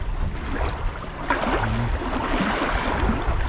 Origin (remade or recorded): recorded